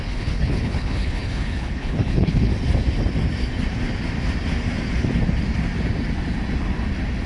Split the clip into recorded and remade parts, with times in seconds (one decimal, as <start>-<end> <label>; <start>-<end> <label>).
0.0-2.5 remade; 2.5-7.3 recorded